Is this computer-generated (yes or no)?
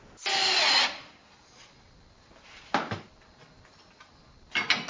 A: no